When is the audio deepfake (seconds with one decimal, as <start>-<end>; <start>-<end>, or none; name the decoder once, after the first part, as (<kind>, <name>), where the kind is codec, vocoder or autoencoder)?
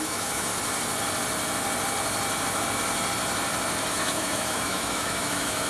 0.0-0.5 (autoencoder, DAC-VAE); 3.9-5.7